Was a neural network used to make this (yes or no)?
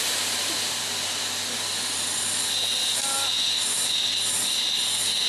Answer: no